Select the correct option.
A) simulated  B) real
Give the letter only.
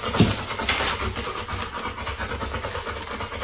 B